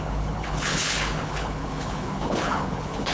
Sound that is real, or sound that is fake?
fake